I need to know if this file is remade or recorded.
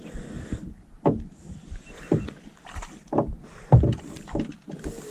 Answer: recorded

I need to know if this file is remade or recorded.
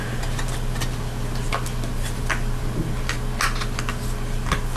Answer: recorded